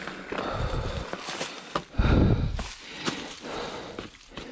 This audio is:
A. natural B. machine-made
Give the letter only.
A